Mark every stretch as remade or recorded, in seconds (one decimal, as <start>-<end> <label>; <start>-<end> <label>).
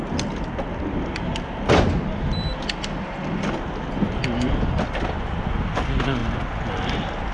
0.0-7.3 recorded